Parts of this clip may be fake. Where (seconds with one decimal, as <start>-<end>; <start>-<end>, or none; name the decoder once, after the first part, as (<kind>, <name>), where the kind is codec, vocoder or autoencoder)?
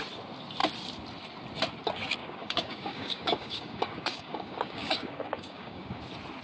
2.2-6.0 (codec, DAC)